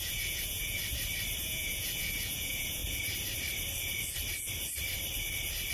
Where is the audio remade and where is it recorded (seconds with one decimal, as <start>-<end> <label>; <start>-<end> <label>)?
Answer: 0.0-0.8 remade; 0.8-1.4 recorded; 1.4-2.8 remade; 2.8-5.7 recorded